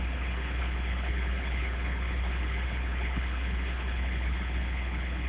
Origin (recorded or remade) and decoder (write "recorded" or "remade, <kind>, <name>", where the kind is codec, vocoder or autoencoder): remade, codec, HILCodec